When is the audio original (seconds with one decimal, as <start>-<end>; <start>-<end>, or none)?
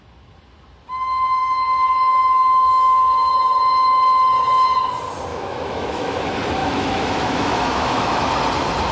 0.0-1.4; 3.3-5.3; 6.1-6.6; 8.3-8.9